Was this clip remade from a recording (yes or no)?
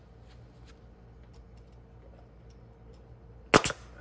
no